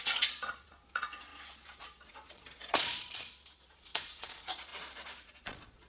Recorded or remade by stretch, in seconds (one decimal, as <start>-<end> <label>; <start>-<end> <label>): 0.0-5.9 remade